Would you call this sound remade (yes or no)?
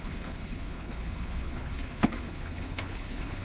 yes